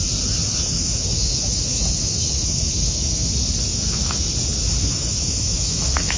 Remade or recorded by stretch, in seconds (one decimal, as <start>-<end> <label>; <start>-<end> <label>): 0.0-0.5 recorded; 0.5-3.3 remade; 3.3-3.7 recorded; 3.7-4.3 remade; 4.3-4.8 recorded; 4.8-6.2 remade